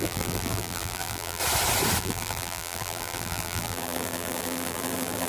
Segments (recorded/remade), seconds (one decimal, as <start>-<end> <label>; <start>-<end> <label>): 0.0-1.4 remade; 1.4-2.0 recorded; 2.0-5.3 remade